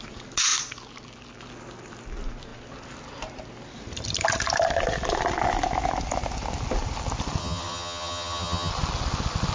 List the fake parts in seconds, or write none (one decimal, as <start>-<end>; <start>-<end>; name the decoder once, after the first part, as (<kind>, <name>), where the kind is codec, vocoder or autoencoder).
7.4-8.7 (vocoder, HiFi-GAN)